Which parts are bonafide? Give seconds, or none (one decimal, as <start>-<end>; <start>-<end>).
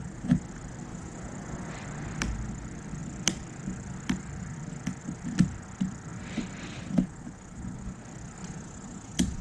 0.0-0.9; 1.7-8.4